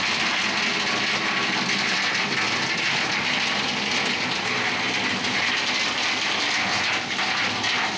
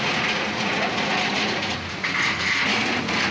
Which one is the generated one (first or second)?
second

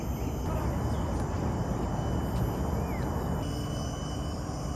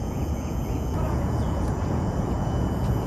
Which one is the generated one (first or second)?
second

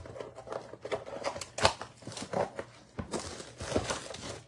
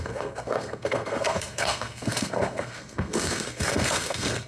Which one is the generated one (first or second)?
second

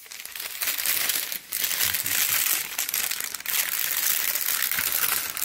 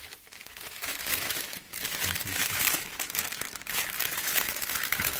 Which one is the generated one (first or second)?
second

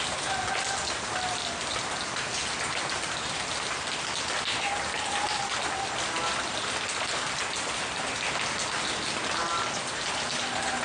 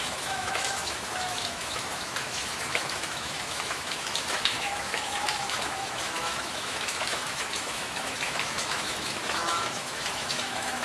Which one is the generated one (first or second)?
second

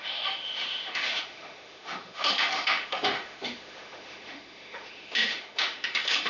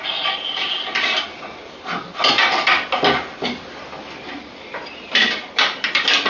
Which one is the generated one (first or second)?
first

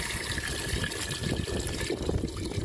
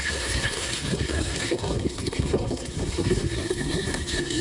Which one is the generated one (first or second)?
second